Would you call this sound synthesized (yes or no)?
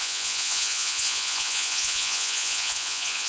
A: yes